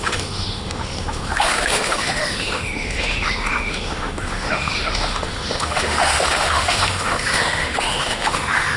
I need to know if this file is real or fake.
fake